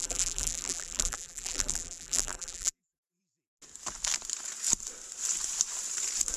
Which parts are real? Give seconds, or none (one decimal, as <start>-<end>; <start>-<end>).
3.2-6.4